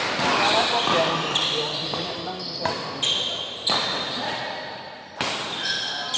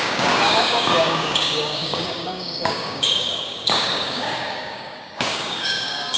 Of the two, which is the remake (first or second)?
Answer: second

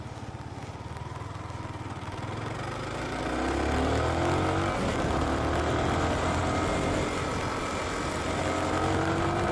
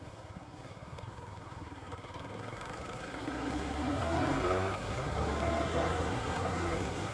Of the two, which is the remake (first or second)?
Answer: second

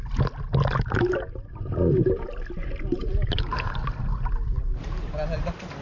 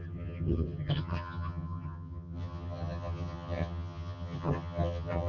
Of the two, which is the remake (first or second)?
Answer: second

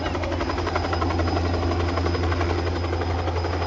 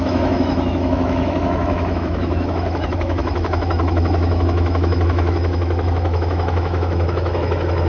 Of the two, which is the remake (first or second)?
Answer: second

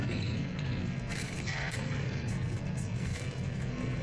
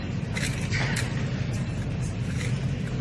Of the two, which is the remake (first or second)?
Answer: first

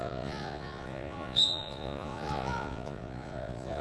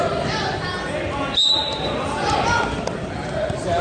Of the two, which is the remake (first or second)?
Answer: first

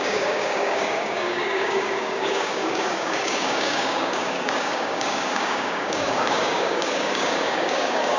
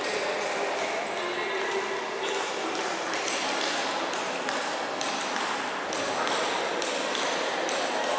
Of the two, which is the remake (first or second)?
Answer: first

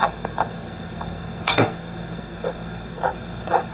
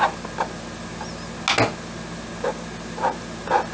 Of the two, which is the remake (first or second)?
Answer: first